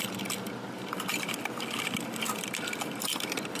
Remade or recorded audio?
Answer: remade